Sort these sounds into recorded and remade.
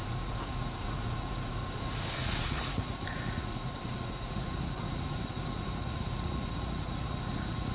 remade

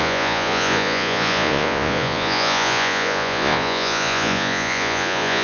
remade